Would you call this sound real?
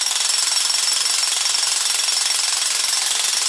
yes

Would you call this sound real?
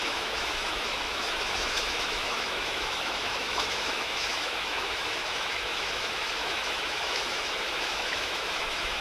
no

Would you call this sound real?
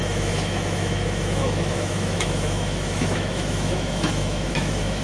no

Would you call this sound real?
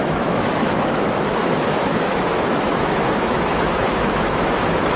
no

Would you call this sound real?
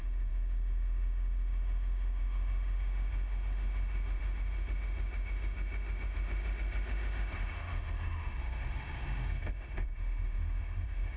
no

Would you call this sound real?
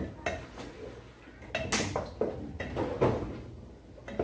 yes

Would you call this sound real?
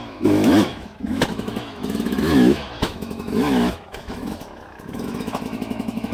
no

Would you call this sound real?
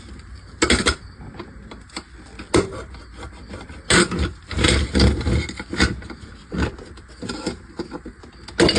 yes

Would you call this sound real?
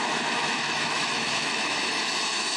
no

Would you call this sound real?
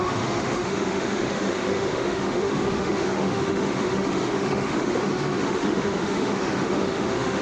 no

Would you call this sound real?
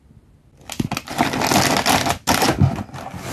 yes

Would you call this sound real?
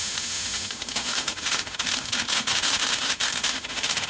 no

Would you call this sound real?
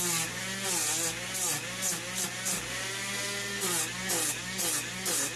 yes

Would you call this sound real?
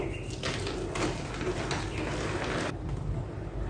yes